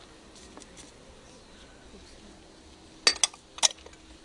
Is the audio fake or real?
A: real